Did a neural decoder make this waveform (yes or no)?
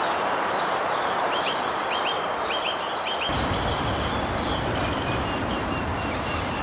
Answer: yes